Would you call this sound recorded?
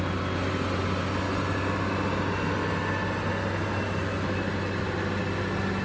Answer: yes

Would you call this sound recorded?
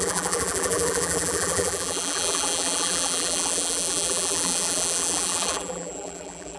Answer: no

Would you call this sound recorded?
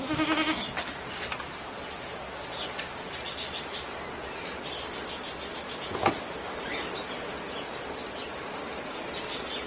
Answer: yes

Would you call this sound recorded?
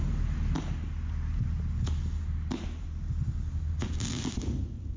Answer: yes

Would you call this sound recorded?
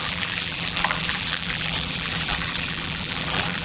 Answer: no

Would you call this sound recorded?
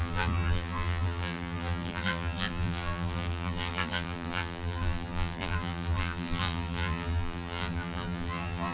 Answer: no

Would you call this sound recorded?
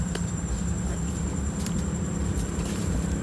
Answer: no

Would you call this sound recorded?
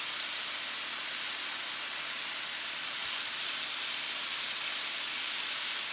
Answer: yes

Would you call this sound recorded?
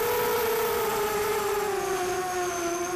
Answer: yes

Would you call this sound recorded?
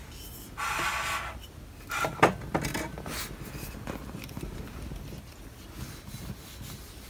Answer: yes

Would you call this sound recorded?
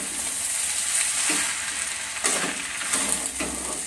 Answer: yes